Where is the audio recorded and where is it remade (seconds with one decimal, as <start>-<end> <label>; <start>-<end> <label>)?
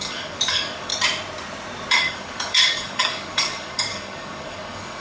0.0-0.9 remade; 0.9-1.9 recorded; 1.9-5.0 remade